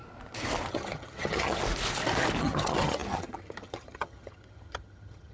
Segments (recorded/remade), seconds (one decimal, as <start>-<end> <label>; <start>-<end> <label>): 0.0-0.7 recorded; 0.7-1.6 remade; 1.6-2.4 recorded; 2.4-5.3 remade